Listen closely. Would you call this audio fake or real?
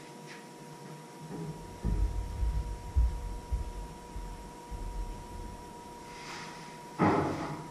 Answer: fake